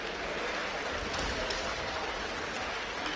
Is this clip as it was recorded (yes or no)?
yes